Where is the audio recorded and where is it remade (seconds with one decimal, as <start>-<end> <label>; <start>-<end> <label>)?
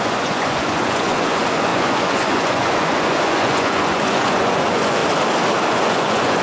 0.0-5.0 remade; 5.0-5.7 recorded; 5.7-6.4 remade